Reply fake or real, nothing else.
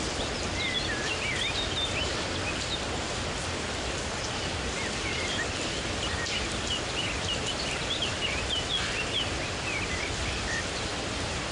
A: fake